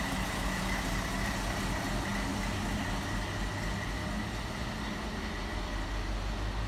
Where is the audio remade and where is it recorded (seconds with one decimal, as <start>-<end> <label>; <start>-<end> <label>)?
0.0-6.7 recorded